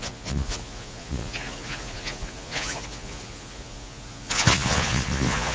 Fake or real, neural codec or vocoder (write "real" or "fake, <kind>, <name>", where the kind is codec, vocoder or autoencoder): fake, vocoder, Vocos